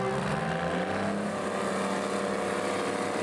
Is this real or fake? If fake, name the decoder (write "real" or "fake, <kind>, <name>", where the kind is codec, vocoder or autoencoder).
real